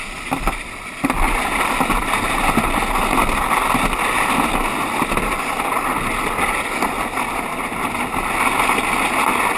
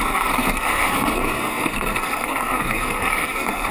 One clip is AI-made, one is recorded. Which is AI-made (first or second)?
second